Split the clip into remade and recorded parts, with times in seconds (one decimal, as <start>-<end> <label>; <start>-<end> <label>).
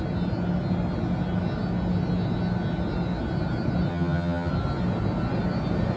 0.0-3.9 recorded; 3.9-4.5 remade; 4.5-6.0 recorded